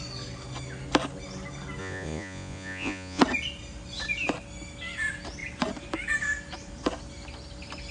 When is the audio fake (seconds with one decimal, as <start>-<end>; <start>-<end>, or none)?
1.8-3.2